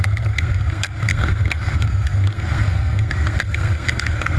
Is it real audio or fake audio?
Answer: fake